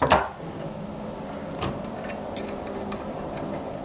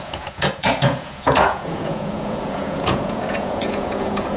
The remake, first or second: second